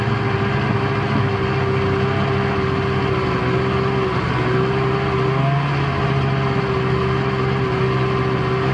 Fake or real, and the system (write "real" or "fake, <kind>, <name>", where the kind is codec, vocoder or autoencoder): real